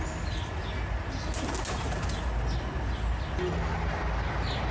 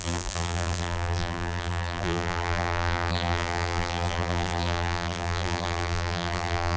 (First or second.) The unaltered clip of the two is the first